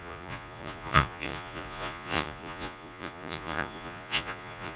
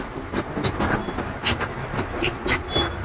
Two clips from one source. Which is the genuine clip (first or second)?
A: second